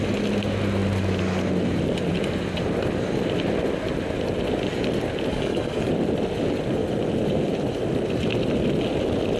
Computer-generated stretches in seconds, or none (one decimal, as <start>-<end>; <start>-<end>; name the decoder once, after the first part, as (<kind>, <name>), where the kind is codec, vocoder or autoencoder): 5.3-5.9 (codec, DAC)